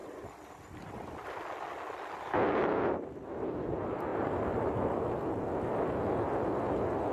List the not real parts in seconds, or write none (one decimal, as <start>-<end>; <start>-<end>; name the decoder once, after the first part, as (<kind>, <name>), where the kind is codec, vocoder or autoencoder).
none